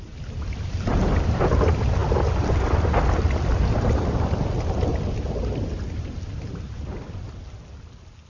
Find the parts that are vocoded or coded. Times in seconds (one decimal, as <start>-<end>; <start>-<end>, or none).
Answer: none